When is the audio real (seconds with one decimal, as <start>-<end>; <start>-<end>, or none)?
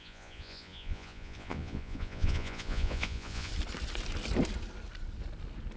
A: 3.5-5.8